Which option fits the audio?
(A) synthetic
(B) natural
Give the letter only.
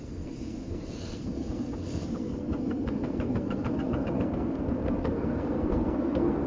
A